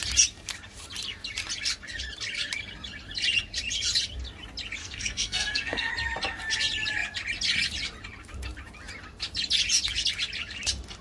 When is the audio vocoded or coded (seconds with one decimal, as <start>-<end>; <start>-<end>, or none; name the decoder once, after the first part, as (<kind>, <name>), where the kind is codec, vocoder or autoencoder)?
4.8-5.9 (codec, SNAC)